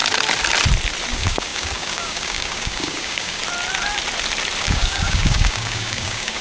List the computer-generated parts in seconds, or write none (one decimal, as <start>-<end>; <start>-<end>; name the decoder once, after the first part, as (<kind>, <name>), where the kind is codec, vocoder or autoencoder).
1.1-3.4 (codec, DAC); 4.6-6.4